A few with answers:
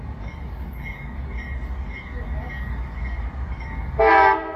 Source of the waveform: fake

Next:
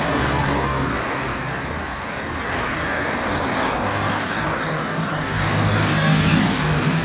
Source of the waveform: fake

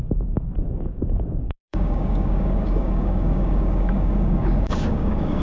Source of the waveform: fake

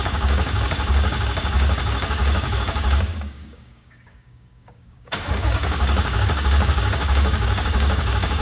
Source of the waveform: fake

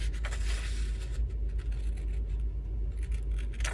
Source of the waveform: real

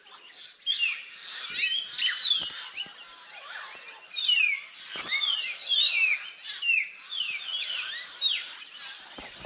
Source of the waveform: real